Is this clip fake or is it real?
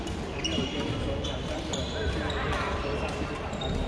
real